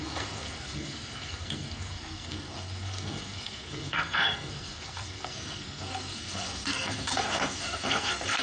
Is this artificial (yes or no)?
yes